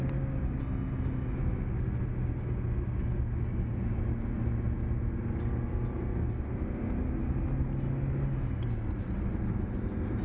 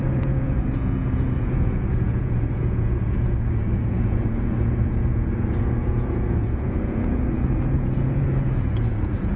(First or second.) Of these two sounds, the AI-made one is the second